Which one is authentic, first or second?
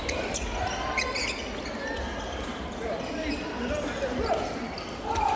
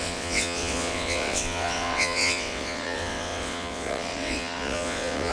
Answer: first